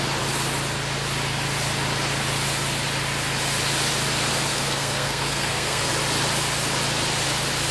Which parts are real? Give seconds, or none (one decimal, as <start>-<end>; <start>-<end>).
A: 0.0-4.5; 5.9-7.7